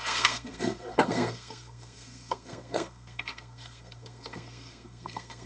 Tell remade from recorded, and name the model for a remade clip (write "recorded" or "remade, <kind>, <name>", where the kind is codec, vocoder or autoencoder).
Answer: remade, codec, SNAC